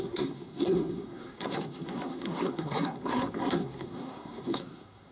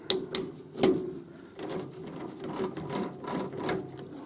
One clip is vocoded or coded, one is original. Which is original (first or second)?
second